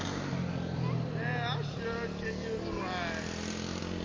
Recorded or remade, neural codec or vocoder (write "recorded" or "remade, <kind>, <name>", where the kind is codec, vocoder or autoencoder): recorded